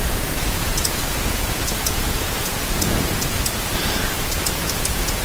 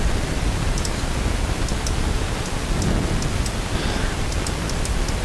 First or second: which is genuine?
second